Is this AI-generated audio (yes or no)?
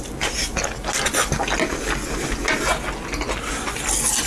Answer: no